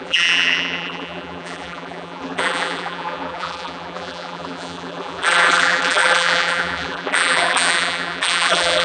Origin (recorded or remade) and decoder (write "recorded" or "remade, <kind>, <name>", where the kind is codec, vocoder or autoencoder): remade, vocoder, BigVGAN v2